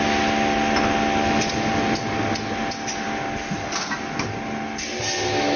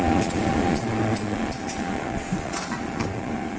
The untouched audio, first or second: first